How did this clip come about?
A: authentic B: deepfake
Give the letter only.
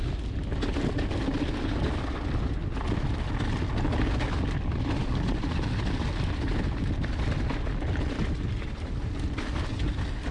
A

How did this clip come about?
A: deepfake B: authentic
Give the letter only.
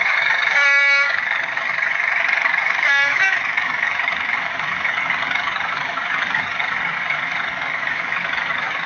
A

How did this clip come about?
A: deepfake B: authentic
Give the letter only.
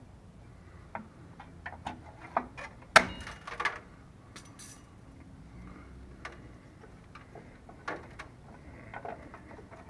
B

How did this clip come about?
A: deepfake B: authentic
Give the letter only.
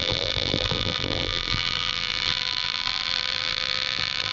A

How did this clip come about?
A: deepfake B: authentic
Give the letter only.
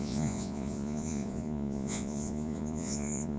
A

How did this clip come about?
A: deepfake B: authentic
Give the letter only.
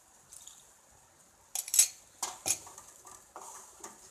B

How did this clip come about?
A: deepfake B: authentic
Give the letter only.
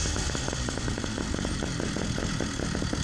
B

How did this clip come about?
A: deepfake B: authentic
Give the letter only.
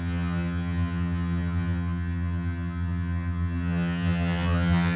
A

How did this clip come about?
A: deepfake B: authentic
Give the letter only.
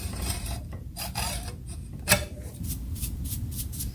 A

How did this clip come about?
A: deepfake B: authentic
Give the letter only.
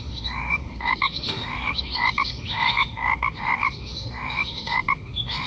A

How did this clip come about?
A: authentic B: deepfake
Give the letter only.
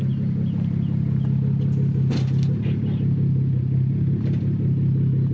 A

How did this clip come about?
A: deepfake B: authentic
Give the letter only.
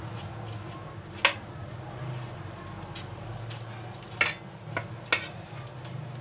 B